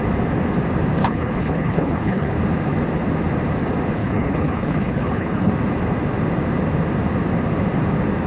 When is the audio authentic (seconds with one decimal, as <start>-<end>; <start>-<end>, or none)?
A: 0.0-1.0; 2.3-4.0; 5.5-8.3